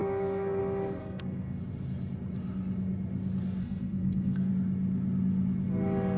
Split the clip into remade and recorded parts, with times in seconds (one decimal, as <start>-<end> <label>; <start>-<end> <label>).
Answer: 0.0-0.6 remade; 0.6-1.0 recorded; 1.0-1.6 remade; 1.6-3.6 recorded; 3.6-4.5 remade; 4.5-6.2 recorded